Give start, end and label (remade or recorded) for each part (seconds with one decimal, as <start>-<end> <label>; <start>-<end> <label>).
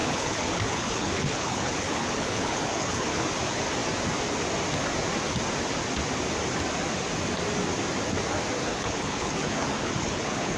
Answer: 0.0-3.2 remade; 3.2-8.7 recorded; 8.7-10.6 remade